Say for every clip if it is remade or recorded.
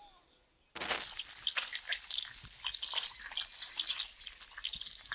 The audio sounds recorded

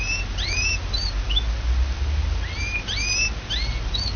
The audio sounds recorded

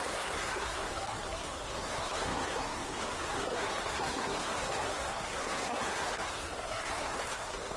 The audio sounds remade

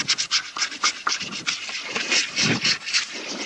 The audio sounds recorded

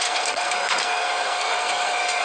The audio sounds remade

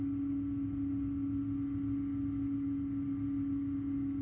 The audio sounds recorded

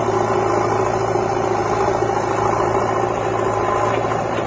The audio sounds recorded